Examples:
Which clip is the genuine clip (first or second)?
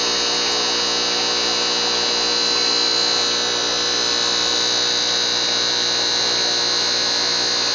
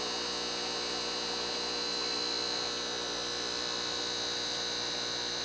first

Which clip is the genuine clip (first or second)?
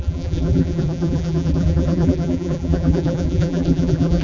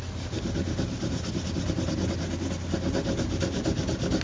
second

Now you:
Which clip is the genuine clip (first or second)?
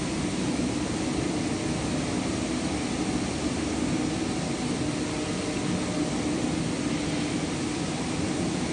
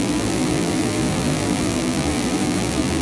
first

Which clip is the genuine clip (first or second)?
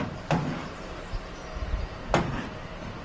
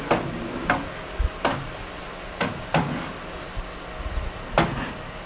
second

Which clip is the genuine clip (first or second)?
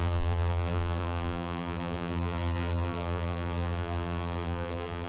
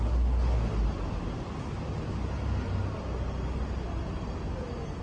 second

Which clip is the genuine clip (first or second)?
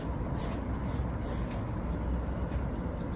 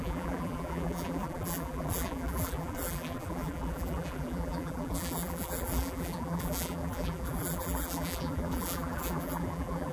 first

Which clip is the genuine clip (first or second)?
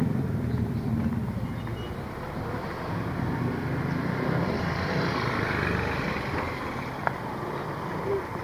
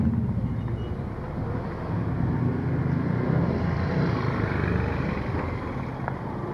second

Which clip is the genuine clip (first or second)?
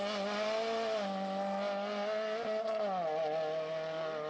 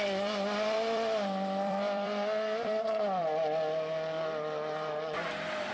first